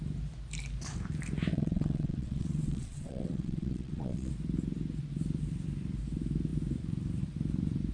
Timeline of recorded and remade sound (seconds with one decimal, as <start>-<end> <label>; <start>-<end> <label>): 0.0-1.5 recorded; 1.5-4.3 remade; 4.3-7.9 recorded